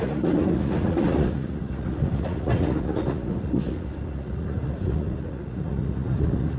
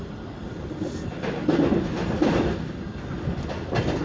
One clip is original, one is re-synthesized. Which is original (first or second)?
second